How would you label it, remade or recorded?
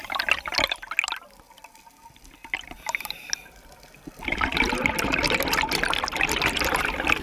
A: recorded